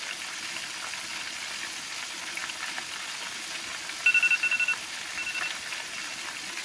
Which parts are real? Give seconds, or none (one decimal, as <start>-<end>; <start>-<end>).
0.0-6.6